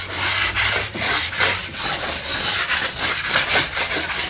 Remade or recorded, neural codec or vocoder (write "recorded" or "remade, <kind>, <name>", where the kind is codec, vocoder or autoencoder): recorded